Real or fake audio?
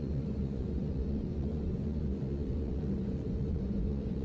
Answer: fake